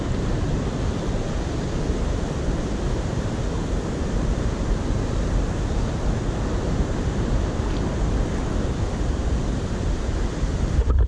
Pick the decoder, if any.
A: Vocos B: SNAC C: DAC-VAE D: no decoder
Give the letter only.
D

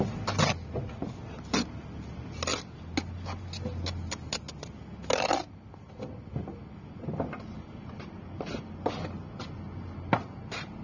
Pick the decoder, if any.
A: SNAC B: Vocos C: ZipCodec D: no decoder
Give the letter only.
D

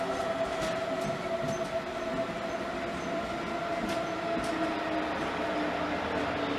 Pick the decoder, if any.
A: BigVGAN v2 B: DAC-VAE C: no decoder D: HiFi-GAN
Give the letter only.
C